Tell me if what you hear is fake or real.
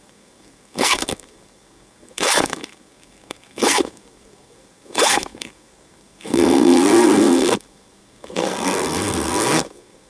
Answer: fake